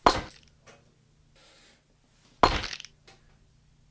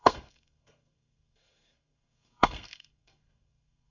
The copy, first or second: second